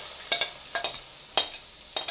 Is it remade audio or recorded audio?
recorded